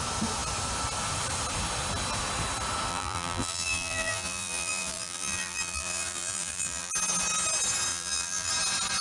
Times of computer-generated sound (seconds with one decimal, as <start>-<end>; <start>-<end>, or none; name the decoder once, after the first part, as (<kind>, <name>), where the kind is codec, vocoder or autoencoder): 2.9-6.9 (vocoder, BigVGAN v2); 7.9-8.5